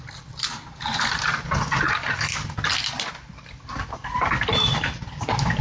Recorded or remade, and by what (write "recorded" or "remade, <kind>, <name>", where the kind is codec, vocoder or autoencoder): recorded